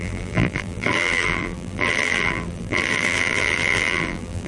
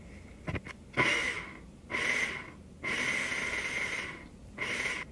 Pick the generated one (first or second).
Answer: first